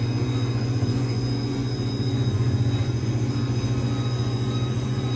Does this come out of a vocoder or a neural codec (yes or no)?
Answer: yes